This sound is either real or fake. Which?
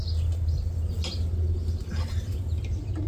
real